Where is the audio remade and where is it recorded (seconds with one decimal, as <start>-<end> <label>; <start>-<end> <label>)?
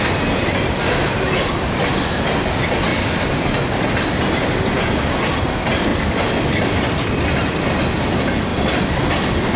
0.0-2.9 recorded; 2.9-4.1 remade; 4.1-5.9 recorded; 5.9-7.1 remade; 7.1-8.5 recorded; 8.5-9.6 remade